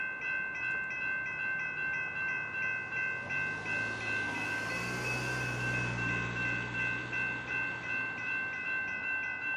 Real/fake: real